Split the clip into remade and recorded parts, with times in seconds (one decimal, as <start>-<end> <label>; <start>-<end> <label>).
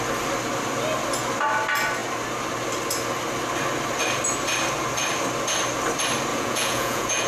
0.0-6.3 recorded; 6.3-7.3 remade